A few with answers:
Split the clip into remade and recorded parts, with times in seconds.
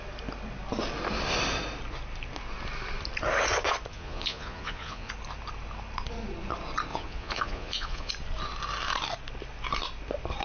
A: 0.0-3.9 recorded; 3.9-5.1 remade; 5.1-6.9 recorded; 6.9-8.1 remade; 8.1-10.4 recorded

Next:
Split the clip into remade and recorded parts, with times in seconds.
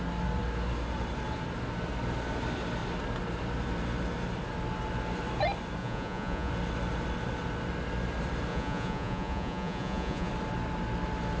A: 0.0-5.8 recorded; 5.8-6.5 remade; 6.5-8.5 recorded; 8.5-10.3 remade; 10.3-11.4 recorded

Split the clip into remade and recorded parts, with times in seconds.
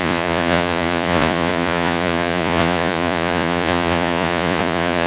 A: 0.0-5.1 remade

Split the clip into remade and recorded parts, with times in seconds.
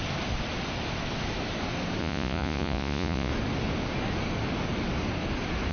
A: 0.0-2.0 recorded; 2.0-3.3 remade; 3.3-5.7 recorded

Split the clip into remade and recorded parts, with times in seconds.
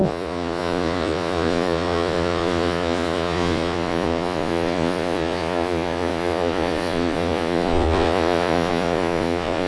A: 0.0-9.7 remade